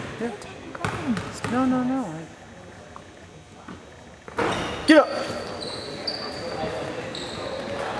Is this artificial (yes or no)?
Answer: no